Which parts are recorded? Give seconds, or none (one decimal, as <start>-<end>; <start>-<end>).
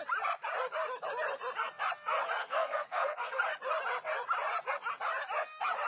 0.0-2.4; 3.4-5.9